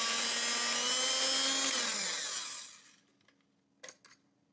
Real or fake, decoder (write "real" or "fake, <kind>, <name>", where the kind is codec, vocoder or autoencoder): real